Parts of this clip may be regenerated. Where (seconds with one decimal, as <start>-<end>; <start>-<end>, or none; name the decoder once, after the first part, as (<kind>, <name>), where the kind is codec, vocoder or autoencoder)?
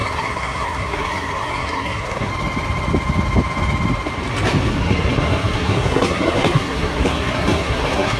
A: 0.0-2.3 (codec, SNAC); 4.7-8.2